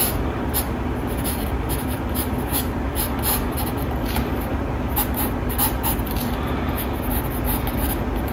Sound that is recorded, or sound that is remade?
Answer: recorded